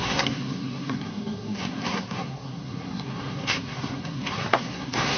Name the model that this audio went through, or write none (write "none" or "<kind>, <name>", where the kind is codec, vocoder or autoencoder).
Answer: codec, SNAC